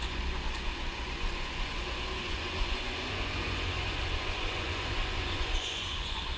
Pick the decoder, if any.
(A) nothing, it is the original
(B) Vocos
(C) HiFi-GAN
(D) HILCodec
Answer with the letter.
B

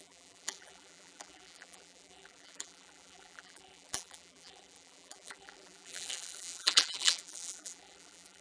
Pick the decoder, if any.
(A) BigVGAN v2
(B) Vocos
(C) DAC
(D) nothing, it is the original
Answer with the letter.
A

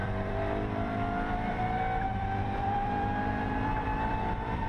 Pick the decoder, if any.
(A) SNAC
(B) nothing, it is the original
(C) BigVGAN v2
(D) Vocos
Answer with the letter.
C